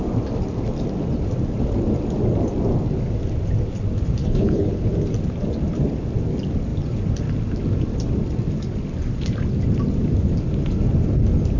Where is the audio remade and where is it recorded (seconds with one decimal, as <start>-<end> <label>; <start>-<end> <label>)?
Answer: 0.0-4.2 recorded; 4.2-4.9 remade; 4.9-11.6 recorded